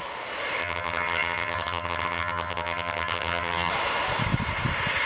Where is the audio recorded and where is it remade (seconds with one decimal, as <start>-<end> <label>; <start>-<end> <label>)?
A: 0.0-0.6 recorded; 0.6-3.7 remade; 3.7-5.1 recorded